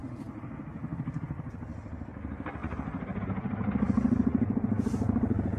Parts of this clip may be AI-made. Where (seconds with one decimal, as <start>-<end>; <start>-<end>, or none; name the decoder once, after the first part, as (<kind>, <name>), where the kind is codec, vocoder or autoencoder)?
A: 2.6-3.2 (vocoder, BigVGAN v2)